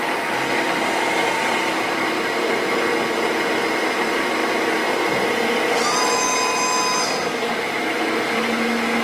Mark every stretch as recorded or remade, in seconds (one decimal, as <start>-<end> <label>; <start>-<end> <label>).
0.0-9.0 recorded